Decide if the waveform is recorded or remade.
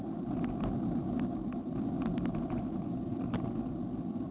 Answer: recorded